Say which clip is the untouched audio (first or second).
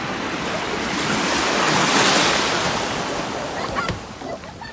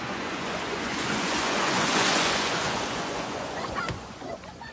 first